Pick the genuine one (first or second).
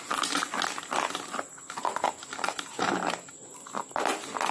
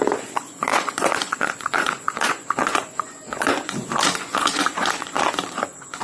first